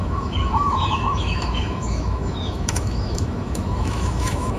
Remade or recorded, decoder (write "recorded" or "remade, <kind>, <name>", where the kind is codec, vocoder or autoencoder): remade, autoencoder, DAC-VAE